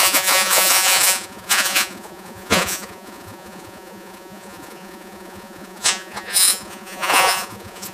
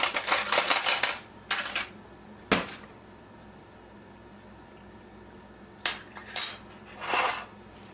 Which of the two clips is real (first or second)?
second